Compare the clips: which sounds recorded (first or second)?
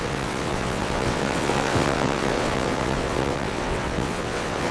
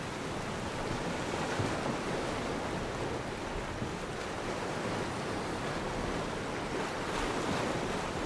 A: second